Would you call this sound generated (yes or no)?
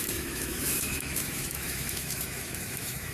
yes